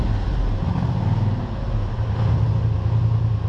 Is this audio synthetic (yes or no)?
no